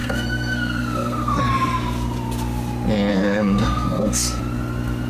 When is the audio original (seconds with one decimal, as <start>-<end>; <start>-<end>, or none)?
1.4-3.1; 4.4-5.1